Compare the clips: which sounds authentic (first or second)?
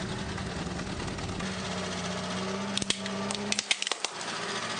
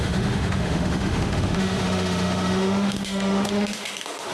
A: first